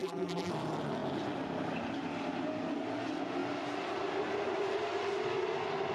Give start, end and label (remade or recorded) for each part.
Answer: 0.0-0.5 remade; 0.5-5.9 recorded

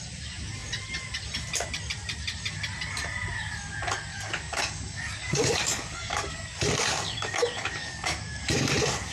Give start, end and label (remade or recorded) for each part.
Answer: 0.0-4.1 recorded; 4.1-8.7 remade; 8.7-9.1 recorded

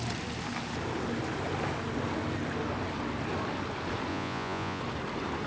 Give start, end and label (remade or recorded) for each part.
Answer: 0.0-4.1 recorded; 4.1-4.8 remade; 4.8-5.5 recorded

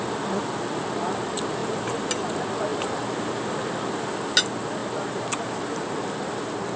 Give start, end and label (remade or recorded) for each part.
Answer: 0.0-1.6 recorded; 1.6-2.2 remade; 2.2-2.7 recorded; 2.7-3.3 remade; 3.3-4.8 recorded; 4.8-5.4 remade; 5.4-6.8 recorded

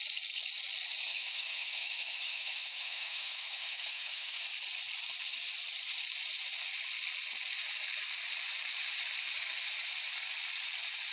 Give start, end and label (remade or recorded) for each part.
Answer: 0.0-1.1 recorded; 1.1-4.5 remade; 4.5-11.1 recorded

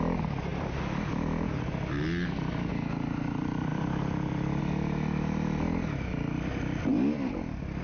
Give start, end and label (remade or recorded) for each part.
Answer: 0.0-0.5 recorded; 0.5-1.1 remade; 1.1-3.7 recorded; 3.7-4.6 remade; 4.6-7.8 recorded